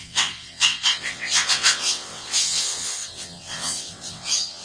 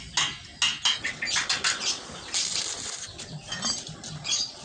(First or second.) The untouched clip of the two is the second